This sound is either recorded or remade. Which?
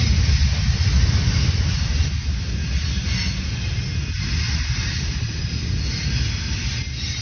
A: recorded